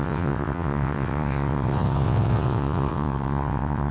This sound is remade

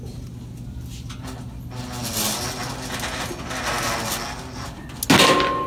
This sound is recorded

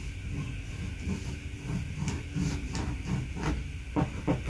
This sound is recorded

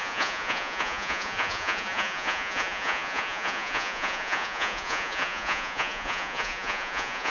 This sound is remade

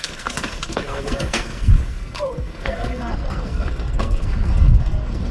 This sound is remade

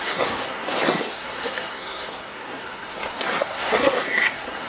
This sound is remade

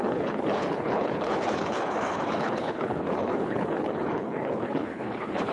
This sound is remade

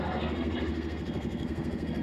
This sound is remade